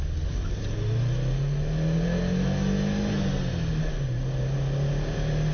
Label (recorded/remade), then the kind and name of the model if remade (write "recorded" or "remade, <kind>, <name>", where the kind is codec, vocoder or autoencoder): recorded